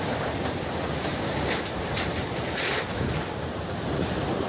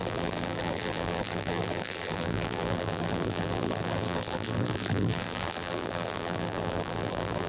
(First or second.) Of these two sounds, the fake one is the second